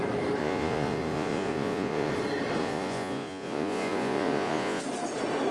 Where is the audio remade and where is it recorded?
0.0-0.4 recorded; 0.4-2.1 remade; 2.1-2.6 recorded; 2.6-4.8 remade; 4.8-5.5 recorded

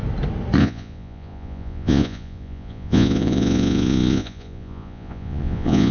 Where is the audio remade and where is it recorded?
0.0-0.6 recorded; 0.6-5.9 remade

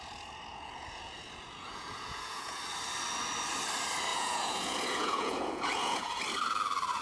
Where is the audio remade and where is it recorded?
0.0-0.5 recorded; 0.5-2.6 remade; 2.6-4.1 recorded; 4.1-6.2 remade; 6.2-7.0 recorded